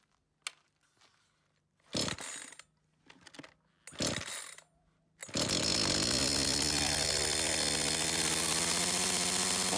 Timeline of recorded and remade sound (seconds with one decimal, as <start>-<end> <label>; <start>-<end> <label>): 0.0-9.8 recorded